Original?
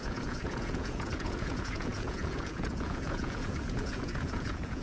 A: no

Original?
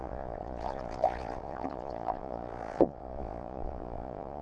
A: no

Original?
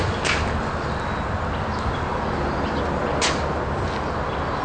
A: yes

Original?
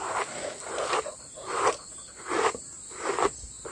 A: yes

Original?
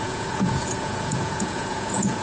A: no